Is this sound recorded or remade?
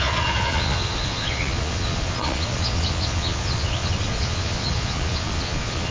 remade